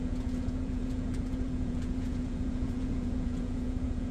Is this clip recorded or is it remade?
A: remade